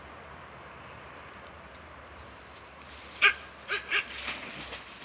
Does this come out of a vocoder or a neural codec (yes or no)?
no